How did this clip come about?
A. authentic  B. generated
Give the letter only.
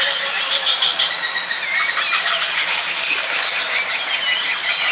A